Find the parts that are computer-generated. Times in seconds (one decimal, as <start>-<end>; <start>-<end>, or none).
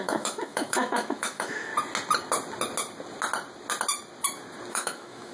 0.0-1.7; 4.7-5.3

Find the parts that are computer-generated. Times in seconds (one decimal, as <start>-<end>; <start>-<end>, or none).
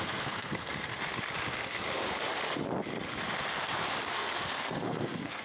0.0-0.9; 4.1-5.4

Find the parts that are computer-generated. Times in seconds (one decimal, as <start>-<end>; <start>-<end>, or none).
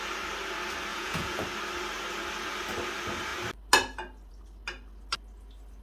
0.9-1.4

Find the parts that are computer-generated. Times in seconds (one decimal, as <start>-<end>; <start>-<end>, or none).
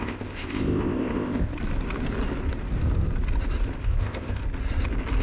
0.0-1.5; 3.8-4.4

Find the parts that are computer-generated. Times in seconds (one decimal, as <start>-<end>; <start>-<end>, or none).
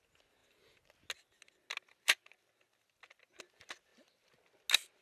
none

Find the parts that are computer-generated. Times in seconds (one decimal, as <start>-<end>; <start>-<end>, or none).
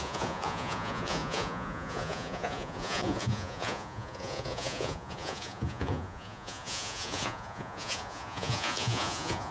0.0-9.5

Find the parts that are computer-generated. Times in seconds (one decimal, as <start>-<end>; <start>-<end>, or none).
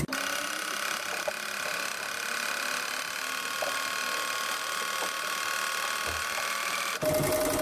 none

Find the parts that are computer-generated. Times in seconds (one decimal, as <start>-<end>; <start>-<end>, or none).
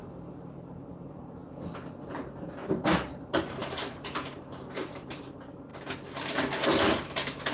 0.0-1.4; 2.2-2.6; 3.1-5.7